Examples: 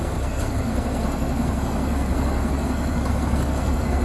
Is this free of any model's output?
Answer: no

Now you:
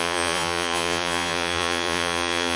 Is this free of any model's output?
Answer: no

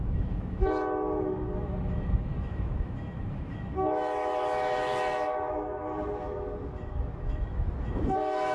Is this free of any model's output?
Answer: no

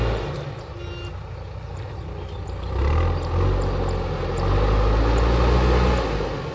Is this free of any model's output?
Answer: yes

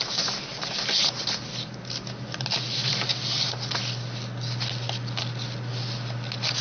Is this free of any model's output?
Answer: yes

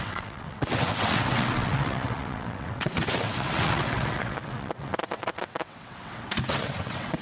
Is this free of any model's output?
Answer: no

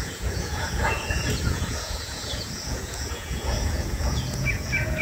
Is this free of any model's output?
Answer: no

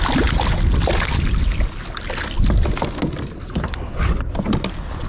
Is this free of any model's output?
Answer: yes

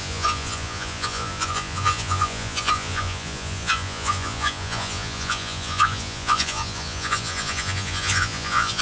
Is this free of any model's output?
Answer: no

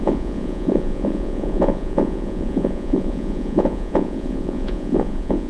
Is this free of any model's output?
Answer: no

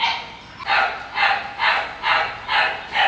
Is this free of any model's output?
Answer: yes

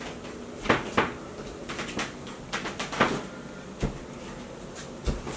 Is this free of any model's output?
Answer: yes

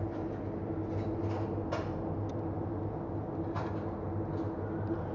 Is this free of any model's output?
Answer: yes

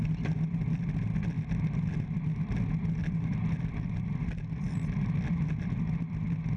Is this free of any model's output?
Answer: yes